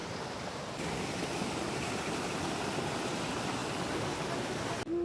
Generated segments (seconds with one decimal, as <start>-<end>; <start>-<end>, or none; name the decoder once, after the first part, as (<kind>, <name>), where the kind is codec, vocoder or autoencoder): none

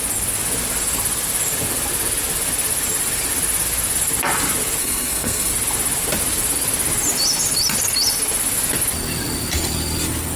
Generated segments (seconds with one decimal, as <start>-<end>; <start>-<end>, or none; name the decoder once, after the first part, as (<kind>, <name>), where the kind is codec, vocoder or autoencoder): 4.8-5.5 (codec, SNAC)

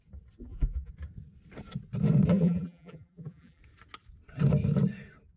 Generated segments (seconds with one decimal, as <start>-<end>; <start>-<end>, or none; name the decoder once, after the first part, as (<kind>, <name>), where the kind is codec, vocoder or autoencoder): 0.4-0.9 (vocoder, BigVGAN v2); 2.3-3.6

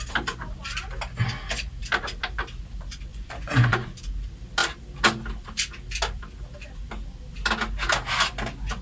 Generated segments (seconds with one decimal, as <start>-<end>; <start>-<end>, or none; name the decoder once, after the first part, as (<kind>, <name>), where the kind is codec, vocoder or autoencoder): 3.1-3.9 (vocoder, Vocos)

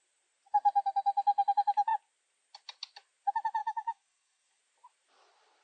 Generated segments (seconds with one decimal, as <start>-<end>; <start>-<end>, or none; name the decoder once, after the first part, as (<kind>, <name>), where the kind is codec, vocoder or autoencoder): 3.6-4.6 (codec, DAC)